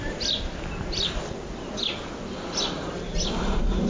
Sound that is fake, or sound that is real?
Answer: real